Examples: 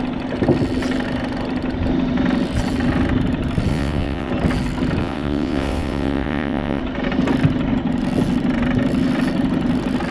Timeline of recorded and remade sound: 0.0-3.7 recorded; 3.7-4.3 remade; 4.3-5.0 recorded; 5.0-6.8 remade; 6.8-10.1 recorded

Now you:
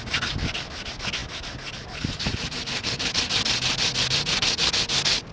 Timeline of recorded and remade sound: 0.0-5.3 recorded

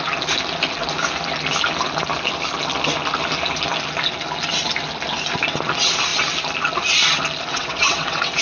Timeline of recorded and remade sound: 0.0-7.5 recorded; 7.5-8.4 remade

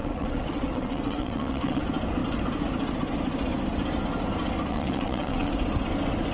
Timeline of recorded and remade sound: 0.0-1.8 remade; 1.8-4.7 recorded; 4.7-5.5 remade; 5.5-6.3 recorded

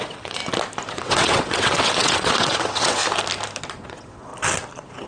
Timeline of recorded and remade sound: 0.0-0.4 remade; 0.4-0.9 recorded; 0.9-3.0 remade; 3.0-3.7 recorded; 3.7-4.3 remade; 4.3-5.1 recorded

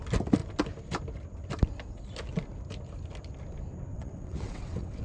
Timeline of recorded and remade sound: 0.0-3.9 recorded; 3.9-5.0 remade

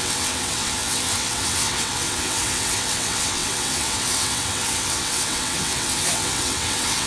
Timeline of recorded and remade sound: 0.0-7.1 remade

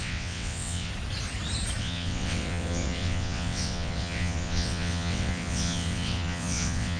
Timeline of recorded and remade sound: 0.0-0.9 remade; 0.9-1.8 recorded; 1.8-7.0 remade